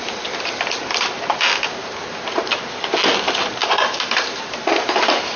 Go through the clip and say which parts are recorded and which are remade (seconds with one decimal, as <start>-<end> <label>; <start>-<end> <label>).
0.0-1.8 recorded; 1.8-2.5 remade; 2.5-3.6 recorded; 3.6-4.5 remade; 4.5-5.4 recorded